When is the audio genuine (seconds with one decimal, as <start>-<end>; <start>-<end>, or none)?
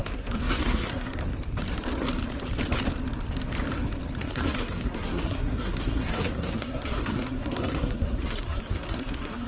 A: 1.2-4.2